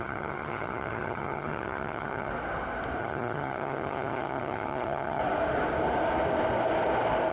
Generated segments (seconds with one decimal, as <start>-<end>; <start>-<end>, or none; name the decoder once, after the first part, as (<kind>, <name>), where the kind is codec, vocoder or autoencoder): 0.0-2.3 (vocoder, HiFi-GAN); 3.0-5.2